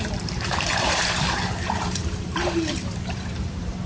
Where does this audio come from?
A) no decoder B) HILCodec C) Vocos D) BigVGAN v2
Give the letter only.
D